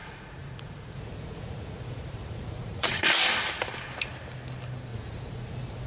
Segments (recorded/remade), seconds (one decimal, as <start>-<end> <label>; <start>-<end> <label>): 0.0-3.0 remade; 3.0-4.9 recorded; 4.9-5.5 remade; 5.5-5.9 recorded